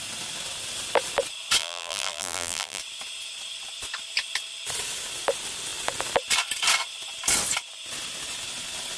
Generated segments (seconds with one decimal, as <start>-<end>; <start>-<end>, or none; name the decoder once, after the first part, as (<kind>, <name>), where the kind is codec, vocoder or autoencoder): 1.6-2.8 (vocoder, BigVGAN v2)